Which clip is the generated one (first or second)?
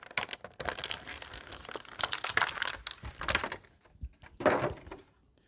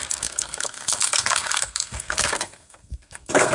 second